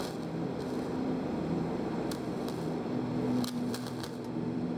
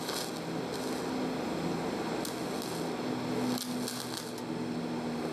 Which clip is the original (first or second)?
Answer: second